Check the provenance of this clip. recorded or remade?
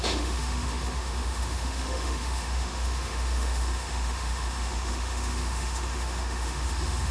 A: remade